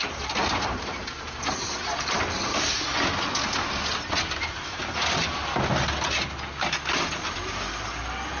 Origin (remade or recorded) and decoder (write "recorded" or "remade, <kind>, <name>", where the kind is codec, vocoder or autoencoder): recorded